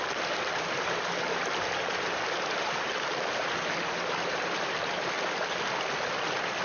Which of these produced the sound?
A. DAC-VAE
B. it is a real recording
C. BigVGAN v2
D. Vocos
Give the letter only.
B